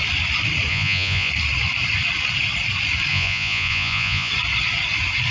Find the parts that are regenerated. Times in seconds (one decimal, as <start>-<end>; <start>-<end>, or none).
0.7-1.3; 3.1-4.3